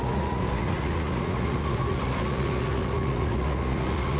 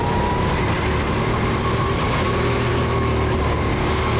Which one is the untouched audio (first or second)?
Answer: second